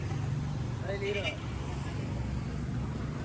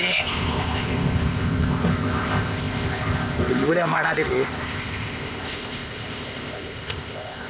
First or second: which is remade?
second